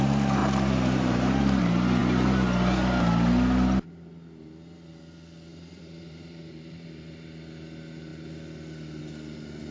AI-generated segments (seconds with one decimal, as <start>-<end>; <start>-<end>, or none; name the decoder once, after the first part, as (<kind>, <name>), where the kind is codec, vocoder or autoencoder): 0.4-1.6 (vocoder, BigVGAN v2); 5.5-7.3